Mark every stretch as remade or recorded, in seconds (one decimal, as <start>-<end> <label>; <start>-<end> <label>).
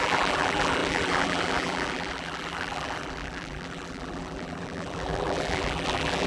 0.0-6.3 remade